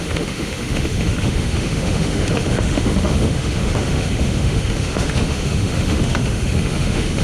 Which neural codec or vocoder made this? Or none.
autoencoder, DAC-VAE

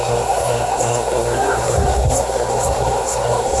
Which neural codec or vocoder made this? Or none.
codec, SNAC